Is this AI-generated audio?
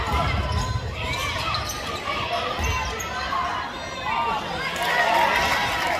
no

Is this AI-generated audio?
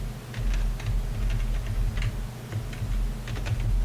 no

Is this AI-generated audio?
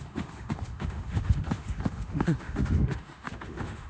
yes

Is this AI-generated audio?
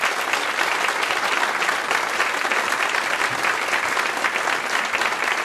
no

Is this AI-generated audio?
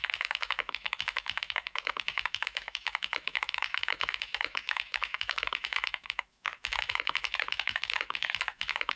yes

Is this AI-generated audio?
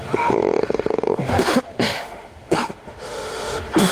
yes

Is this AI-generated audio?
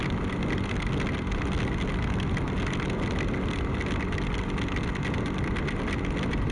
no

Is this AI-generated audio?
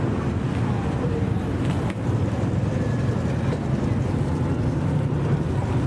no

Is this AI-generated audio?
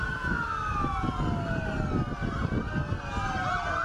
no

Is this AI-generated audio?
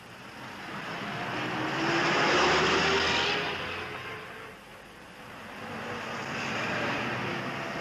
no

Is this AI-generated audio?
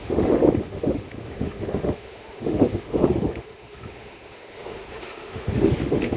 yes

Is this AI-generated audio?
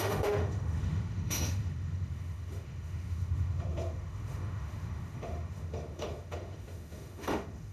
yes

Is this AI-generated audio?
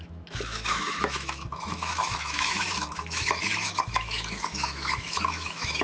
yes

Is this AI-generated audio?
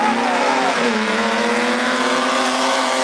yes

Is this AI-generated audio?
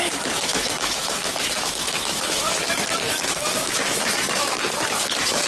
yes